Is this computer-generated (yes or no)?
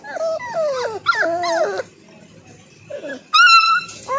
no